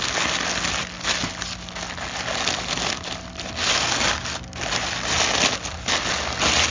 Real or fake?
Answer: real